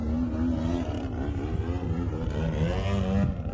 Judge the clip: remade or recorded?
recorded